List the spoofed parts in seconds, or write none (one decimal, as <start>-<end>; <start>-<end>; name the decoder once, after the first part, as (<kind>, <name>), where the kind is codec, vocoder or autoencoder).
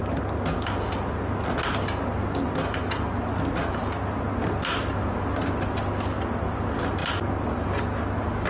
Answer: none